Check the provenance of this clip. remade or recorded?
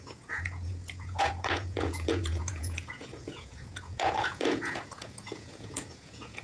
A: remade